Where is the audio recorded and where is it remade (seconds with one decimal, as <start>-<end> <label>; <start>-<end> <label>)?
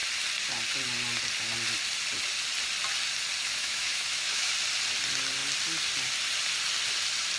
0.0-3.4 recorded; 3.4-4.5 remade; 4.5-7.4 recorded